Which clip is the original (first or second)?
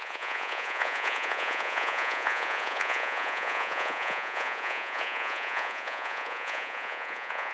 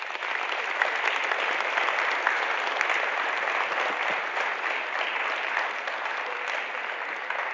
second